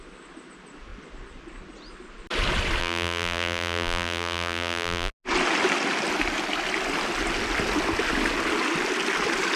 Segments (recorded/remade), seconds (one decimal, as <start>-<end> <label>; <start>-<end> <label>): 0.0-2.8 recorded; 2.8-5.1 remade; 5.1-9.6 recorded